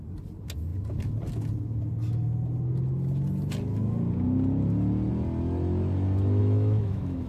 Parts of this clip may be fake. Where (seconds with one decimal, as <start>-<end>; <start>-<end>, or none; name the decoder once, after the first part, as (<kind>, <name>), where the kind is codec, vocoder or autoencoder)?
6.4-7.3 (autoencoder, DAC-VAE)